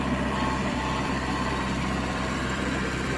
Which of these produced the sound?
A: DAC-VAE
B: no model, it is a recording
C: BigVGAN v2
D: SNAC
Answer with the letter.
C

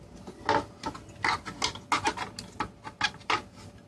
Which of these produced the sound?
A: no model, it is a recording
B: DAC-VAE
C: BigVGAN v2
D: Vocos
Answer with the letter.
A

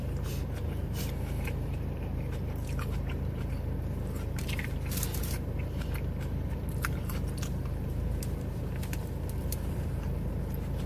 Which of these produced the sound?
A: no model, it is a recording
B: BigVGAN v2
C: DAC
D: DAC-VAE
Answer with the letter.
B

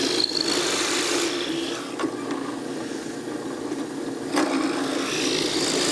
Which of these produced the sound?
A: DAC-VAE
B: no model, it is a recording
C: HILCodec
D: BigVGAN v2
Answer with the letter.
B